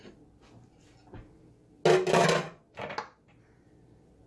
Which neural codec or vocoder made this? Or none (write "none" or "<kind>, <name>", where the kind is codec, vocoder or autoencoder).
none